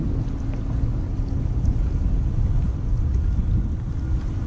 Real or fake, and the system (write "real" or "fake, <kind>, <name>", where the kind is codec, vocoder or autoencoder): real